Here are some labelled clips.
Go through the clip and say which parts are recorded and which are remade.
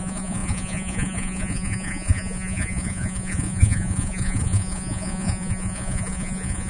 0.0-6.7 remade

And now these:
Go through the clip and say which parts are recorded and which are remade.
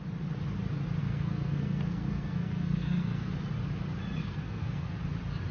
0.0-1.0 recorded; 1.0-3.3 remade; 3.3-4.2 recorded; 4.2-5.0 remade; 5.0-5.5 recorded